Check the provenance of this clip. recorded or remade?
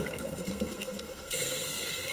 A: remade